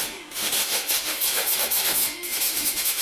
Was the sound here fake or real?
fake